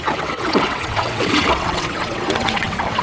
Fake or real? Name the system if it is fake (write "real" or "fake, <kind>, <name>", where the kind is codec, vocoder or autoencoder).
fake, vocoder, WaveNeXt